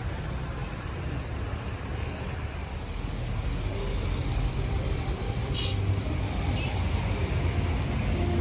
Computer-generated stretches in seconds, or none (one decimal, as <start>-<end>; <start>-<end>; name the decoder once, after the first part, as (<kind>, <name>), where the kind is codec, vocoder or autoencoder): 0.6-1.1 (vocoder, BigVGAN v2); 1.9-2.7; 4.2-5.5